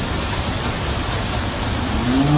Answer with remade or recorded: recorded